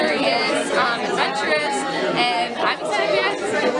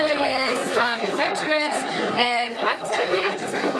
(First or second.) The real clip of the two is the first